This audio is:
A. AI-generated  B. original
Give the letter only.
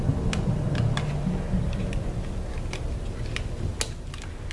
B